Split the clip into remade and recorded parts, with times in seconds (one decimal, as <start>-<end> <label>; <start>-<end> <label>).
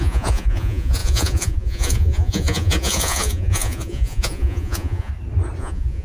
0.0-5.1 remade; 5.1-5.6 recorded; 5.6-6.0 remade